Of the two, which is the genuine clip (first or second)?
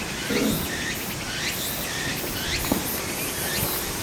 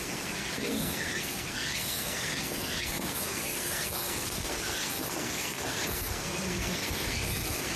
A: first